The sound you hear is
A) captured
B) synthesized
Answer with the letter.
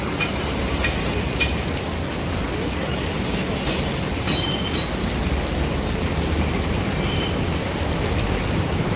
A